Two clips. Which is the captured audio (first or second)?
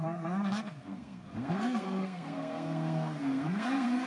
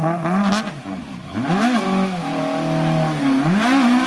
second